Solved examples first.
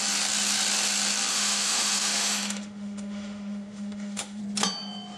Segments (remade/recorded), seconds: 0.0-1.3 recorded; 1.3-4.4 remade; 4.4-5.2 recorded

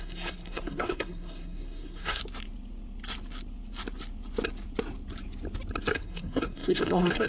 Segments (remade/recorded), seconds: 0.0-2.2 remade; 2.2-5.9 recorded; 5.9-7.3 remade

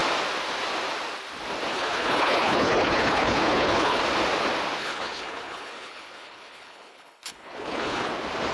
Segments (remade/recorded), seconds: 0.0-1.7 recorded; 1.7-4.0 remade; 4.0-4.8 recorded; 4.8-8.1 remade; 8.1-8.5 recorded